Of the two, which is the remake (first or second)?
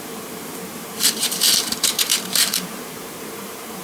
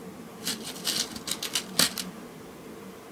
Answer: first